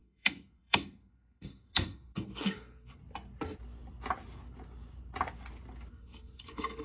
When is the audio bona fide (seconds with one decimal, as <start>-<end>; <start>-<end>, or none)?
3.0-5.9